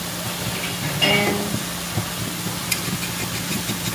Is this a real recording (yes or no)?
yes